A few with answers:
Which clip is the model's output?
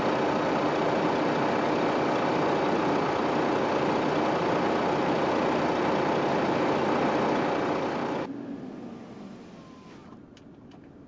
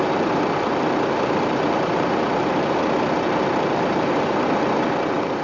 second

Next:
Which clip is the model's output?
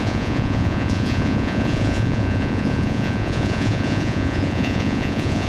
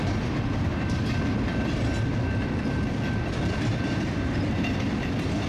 first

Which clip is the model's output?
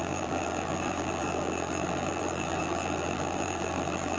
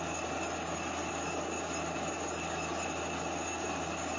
first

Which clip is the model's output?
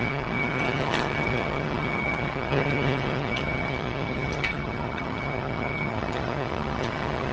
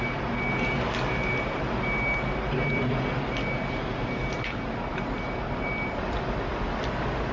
first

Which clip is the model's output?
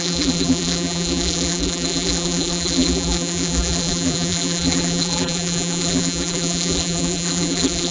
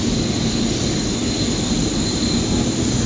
first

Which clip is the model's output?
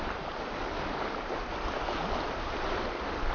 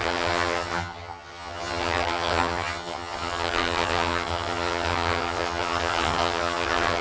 second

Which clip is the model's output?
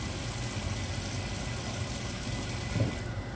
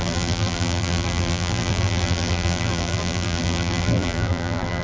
second